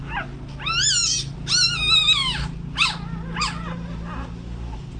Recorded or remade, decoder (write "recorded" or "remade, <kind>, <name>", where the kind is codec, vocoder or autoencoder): recorded